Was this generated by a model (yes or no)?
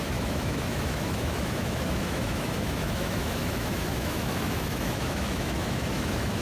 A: yes